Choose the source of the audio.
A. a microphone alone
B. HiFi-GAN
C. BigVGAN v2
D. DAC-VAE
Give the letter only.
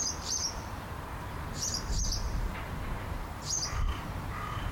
C